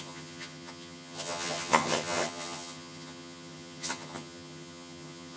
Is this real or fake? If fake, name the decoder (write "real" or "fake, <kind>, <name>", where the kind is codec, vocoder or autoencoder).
fake, vocoder, HiFi-GAN